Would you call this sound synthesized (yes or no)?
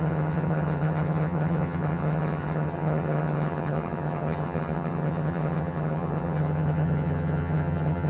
yes